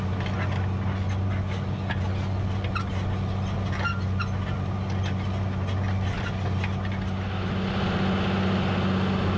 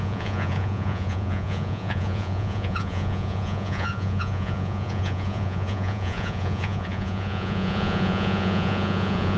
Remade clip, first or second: second